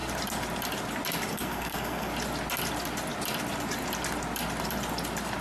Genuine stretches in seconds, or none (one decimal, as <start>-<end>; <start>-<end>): 0.0-1.3; 2.1-5.4